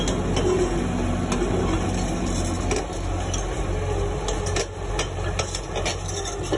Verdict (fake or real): real